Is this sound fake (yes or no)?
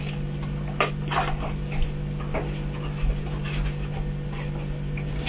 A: no